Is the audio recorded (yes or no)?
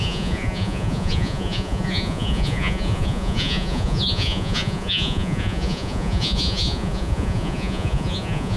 no